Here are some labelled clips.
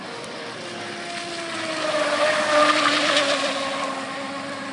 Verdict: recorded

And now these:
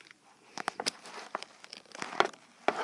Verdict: recorded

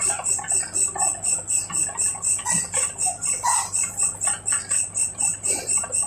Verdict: recorded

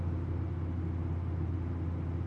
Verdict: recorded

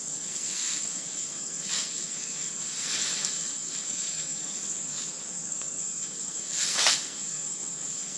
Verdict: remade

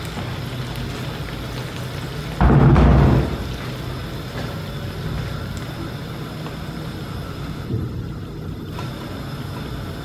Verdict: recorded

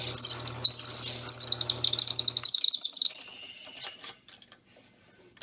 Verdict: recorded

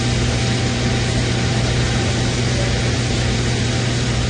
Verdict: recorded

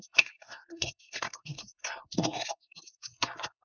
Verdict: remade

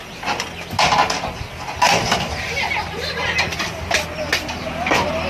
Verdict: recorded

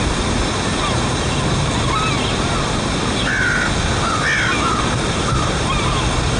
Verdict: recorded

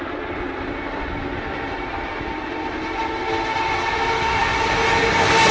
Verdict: recorded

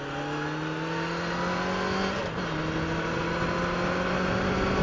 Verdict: recorded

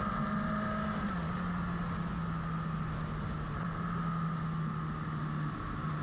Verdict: recorded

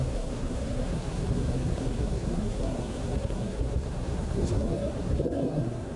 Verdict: remade